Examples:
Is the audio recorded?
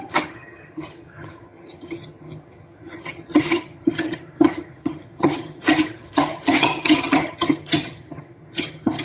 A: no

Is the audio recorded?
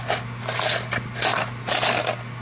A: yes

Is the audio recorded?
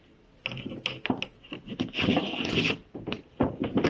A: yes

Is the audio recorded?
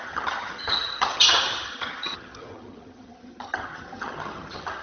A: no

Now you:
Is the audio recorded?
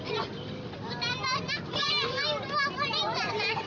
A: yes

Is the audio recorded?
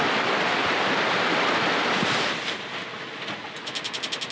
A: yes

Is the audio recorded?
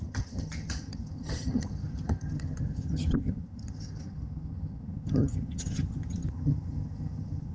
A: no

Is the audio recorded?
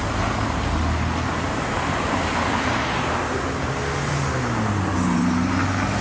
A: yes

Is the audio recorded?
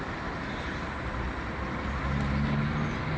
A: yes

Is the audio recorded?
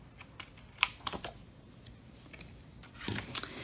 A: yes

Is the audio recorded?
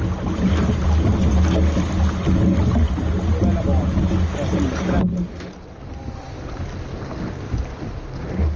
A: yes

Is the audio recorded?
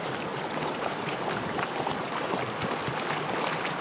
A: yes